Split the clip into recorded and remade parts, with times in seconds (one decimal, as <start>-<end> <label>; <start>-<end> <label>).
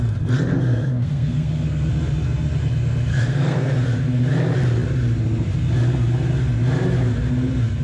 0.0-0.5 recorded; 0.5-1.9 remade; 1.9-3.1 recorded; 3.1-3.7 remade; 3.7-7.8 recorded